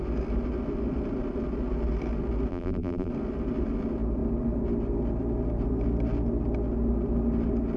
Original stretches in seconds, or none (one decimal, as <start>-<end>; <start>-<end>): 0.0-2.5; 3.1-7.8